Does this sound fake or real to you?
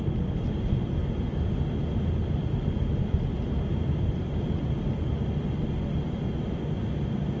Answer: real